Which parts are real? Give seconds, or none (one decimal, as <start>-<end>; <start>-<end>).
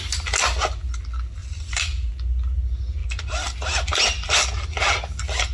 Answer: 0.0-1.4; 2.1-3.0; 4.4-5.5